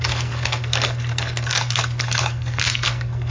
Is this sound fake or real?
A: fake